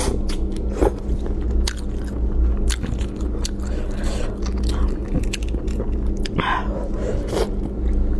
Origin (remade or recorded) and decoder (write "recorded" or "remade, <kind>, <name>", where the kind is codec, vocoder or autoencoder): recorded